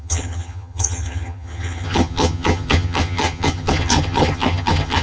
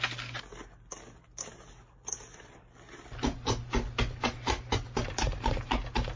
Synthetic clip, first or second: first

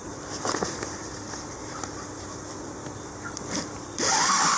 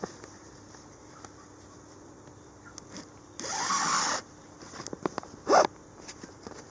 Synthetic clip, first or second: first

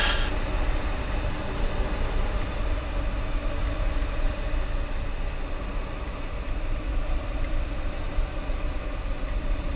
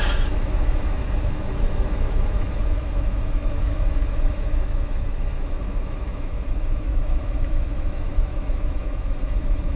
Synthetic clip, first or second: second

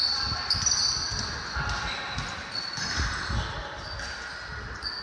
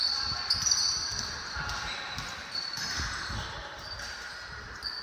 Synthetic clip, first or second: second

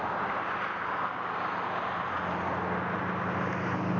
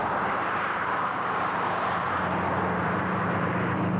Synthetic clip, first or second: second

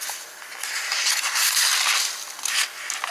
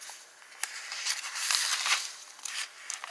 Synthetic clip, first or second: second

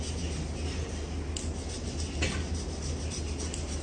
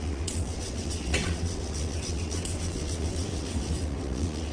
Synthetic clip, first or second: second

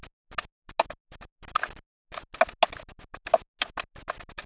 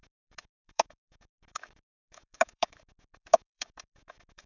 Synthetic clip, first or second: second